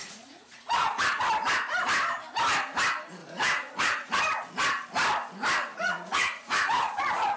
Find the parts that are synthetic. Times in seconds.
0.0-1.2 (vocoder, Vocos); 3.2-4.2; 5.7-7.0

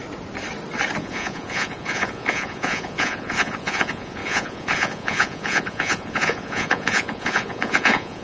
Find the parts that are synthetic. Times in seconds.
1.0-8.2 (vocoder, Vocos)

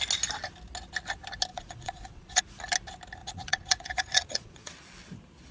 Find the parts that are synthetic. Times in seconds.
1.5-2.4 (vocoder, Vocos); 3.2-4.7

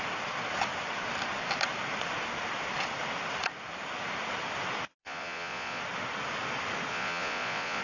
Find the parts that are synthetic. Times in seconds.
5.0-5.8 (vocoder, Vocos); 6.9-7.8

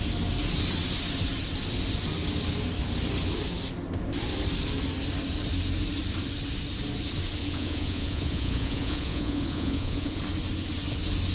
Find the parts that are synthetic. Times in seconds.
7.4-10.2 (vocoder, Vocos)

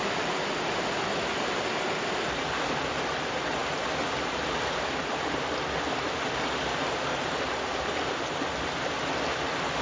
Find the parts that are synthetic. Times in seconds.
3.6-5.4 (vocoder, BigVGAN v2)